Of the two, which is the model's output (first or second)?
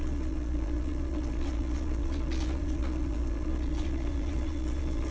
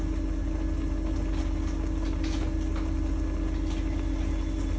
first